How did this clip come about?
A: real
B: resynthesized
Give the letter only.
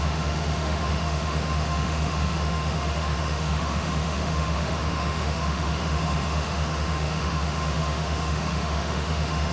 B